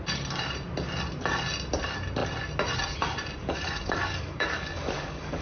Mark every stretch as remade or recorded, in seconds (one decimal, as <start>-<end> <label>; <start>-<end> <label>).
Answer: 0.0-3.4 recorded; 3.4-5.4 remade